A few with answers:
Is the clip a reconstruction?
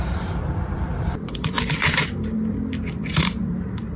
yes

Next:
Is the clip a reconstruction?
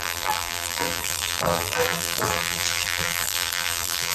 yes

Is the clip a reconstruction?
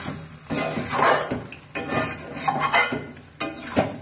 no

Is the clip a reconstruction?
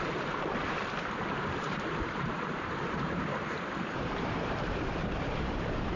yes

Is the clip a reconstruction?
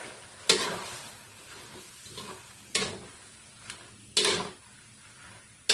no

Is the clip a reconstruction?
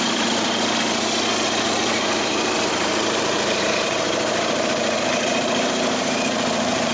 yes